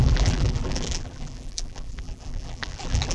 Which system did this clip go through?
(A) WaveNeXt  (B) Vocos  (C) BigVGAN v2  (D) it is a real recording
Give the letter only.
C